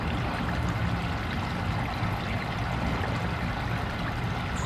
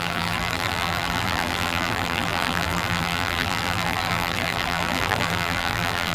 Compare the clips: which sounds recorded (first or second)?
first